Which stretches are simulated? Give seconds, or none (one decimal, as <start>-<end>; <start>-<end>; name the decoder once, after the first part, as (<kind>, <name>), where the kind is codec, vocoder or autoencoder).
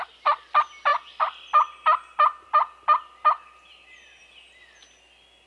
none